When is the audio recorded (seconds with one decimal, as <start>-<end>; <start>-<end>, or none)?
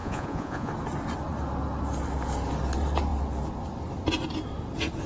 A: 0.7-5.1